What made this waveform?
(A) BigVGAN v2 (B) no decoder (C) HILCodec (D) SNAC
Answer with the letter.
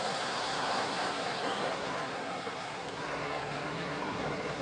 D